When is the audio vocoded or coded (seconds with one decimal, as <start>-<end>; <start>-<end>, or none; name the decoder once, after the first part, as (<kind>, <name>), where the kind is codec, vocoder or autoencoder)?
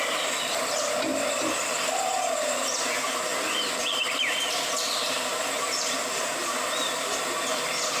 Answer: none